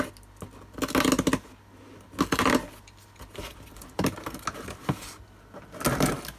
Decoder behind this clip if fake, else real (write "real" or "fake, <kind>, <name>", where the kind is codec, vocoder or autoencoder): real